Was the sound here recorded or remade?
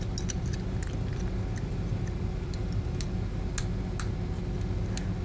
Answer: recorded